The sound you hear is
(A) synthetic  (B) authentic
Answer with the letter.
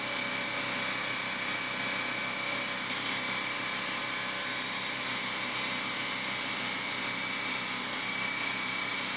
B